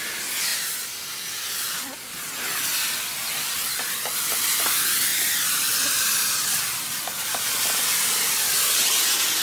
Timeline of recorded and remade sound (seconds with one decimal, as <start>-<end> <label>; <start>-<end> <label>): 0.0-0.5 recorded; 0.5-1.8 remade; 1.8-2.7 recorded; 2.7-3.2 remade; 3.2-5.1 recorded; 5.1-8.0 remade; 8.0-9.4 recorded